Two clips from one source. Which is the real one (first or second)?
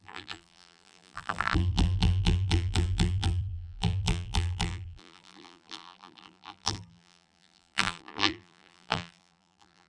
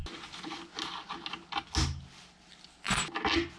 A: second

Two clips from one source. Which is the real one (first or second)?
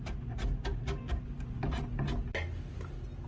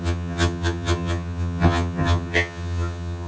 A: first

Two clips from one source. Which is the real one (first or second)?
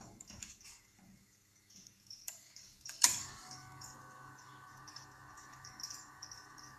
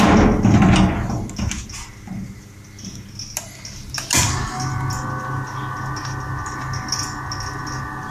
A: second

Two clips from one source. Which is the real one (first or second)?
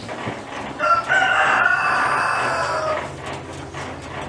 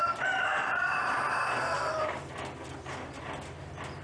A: first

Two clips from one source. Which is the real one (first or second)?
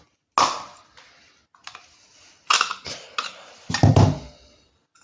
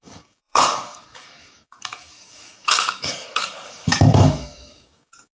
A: first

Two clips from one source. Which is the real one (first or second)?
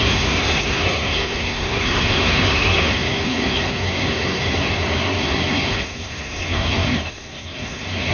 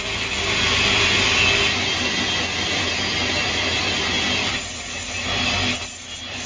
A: second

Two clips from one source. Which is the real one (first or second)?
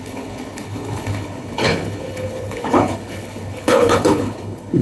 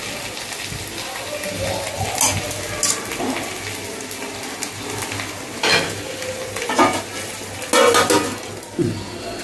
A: second